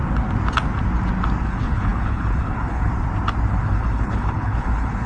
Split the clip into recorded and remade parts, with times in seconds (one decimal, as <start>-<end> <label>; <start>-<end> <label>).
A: 0.0-1.4 recorded; 1.4-2.9 remade; 2.9-3.5 recorded; 3.5-5.1 remade